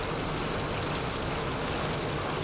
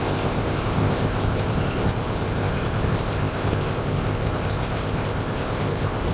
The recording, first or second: first